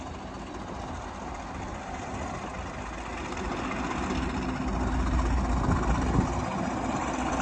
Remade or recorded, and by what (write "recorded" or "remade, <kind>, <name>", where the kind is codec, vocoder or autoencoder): recorded